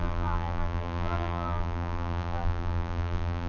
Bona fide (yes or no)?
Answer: no